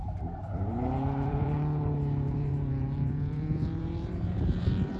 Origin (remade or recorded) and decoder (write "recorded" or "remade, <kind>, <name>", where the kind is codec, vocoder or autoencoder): remade, vocoder, BigVGAN v2